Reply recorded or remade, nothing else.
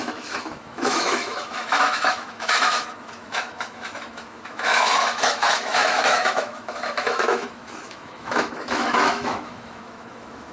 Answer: remade